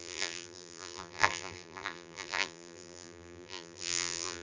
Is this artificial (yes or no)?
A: yes